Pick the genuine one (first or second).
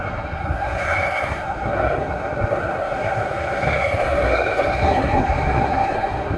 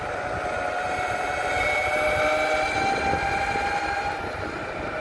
second